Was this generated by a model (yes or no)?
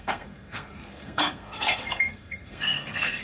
yes